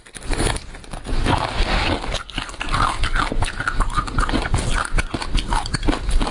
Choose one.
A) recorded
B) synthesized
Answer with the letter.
A